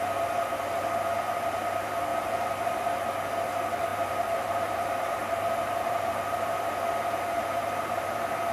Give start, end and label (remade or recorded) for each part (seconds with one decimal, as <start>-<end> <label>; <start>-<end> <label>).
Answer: 0.0-2.1 recorded; 2.1-2.7 remade; 2.7-3.9 recorded; 3.9-8.5 remade